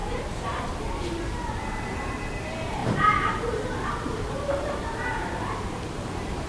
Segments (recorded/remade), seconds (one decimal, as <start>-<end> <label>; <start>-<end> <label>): 0.0-2.8 remade; 2.8-3.3 recorded; 3.3-6.5 remade